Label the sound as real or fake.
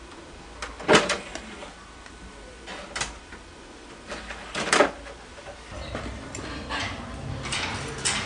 fake